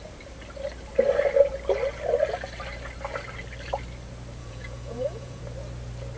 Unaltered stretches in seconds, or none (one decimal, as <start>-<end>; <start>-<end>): 0.0-4.4; 5.4-6.2